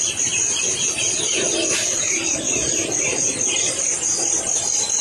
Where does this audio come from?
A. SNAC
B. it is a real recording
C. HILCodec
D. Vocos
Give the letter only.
B